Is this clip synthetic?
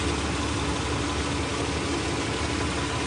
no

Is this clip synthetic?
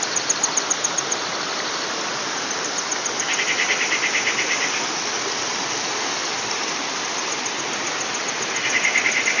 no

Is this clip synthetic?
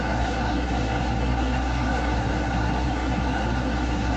yes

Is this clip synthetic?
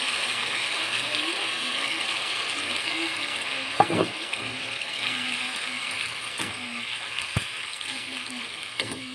yes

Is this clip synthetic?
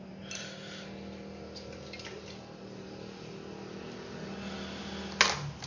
no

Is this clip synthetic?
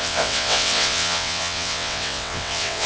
yes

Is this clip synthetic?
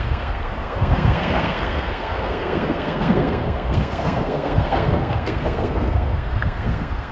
yes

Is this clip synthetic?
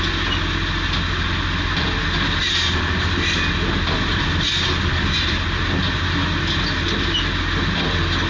no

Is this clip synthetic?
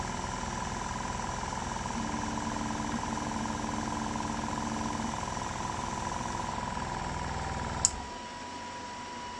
no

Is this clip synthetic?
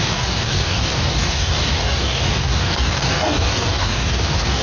yes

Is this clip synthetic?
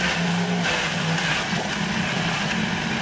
no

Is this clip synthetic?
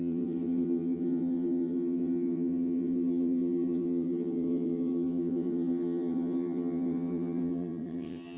yes